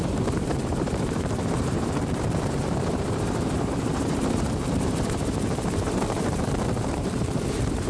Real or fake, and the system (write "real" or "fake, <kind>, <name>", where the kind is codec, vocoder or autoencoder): fake, vocoder, BigVGAN v2